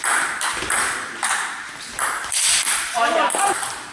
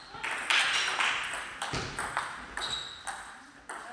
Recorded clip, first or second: second